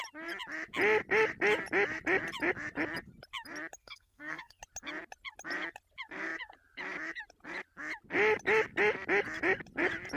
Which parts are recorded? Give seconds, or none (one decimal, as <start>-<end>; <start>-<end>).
0.0-3.8; 4.6-10.2